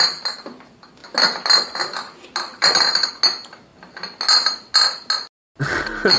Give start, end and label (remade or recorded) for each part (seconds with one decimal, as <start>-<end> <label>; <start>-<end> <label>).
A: 0.0-2.5 recorded; 2.5-3.1 remade; 3.1-6.2 recorded